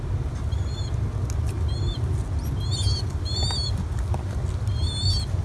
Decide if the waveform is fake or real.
real